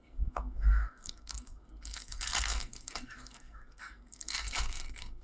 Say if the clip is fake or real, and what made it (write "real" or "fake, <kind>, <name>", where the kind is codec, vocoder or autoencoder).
fake, codec, SNAC